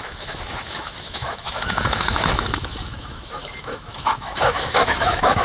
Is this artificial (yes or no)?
yes